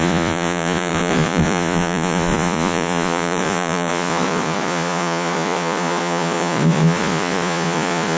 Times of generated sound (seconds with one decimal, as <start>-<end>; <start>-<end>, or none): 0.0-8.2